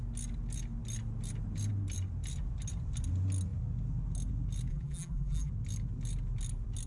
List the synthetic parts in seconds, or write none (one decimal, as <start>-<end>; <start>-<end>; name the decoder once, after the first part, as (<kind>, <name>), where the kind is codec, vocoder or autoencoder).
4.7-5.5 (vocoder, BigVGAN v2)